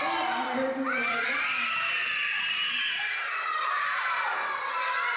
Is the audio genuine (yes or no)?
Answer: no